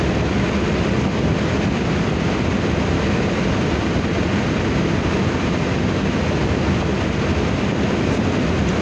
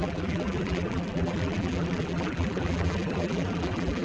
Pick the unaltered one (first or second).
first